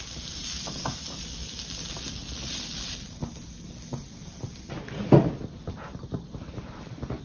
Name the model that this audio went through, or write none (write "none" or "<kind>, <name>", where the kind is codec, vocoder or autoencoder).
none